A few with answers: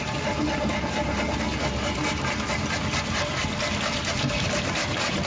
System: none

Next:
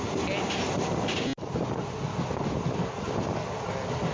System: none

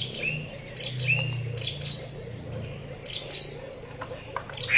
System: none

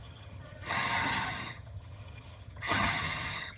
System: vocoder, HiFi-GAN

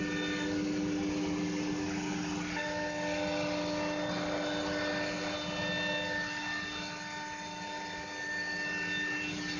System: none